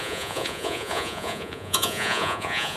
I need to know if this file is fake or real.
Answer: fake